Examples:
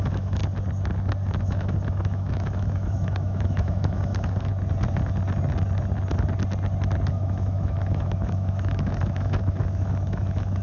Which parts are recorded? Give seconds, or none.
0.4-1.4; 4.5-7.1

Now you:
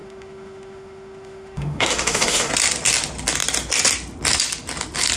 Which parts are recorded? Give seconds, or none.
2.5-5.2

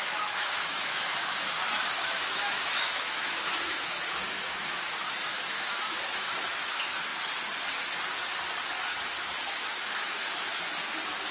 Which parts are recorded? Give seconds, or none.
7.1-9.2; 10.5-11.3

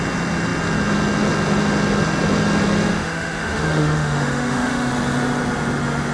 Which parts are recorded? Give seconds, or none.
0.0-2.9; 4.9-6.1